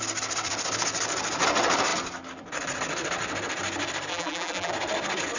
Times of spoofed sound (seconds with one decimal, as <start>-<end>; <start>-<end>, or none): 4.1-4.7